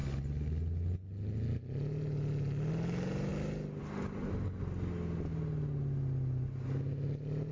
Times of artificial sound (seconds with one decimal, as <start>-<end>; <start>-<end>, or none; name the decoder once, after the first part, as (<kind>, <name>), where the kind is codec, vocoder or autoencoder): none